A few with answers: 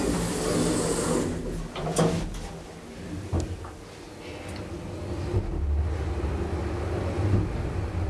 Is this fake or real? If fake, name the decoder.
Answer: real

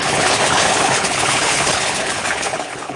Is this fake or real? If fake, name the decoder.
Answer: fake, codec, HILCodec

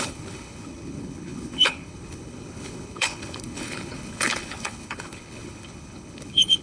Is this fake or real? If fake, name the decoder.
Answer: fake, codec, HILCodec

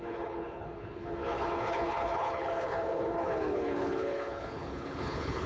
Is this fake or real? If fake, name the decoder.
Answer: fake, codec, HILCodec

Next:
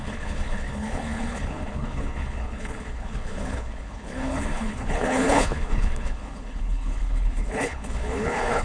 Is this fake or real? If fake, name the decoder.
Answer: fake, codec, HILCodec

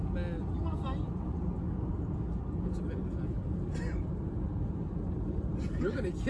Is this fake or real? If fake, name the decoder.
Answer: real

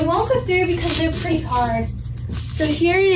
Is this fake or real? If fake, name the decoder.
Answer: real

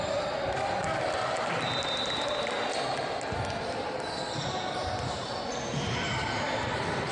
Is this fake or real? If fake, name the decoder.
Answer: real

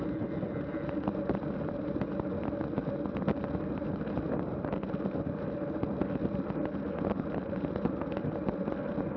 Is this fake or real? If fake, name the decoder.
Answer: real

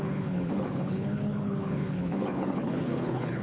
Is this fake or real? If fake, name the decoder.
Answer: fake, codec, HILCodec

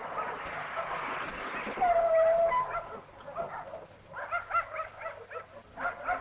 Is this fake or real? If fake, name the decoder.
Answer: real